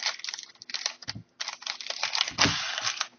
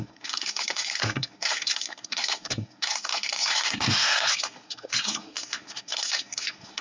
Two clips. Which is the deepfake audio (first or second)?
second